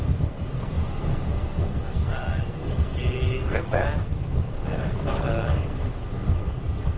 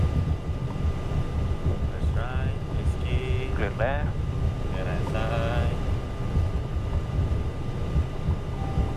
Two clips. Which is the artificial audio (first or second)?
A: first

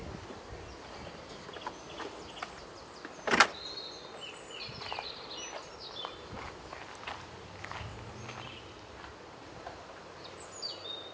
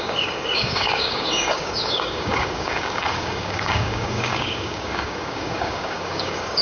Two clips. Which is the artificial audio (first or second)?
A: second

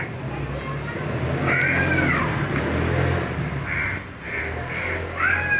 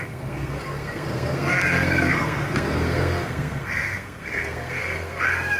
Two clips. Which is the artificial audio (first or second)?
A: second